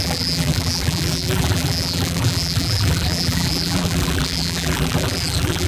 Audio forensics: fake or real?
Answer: fake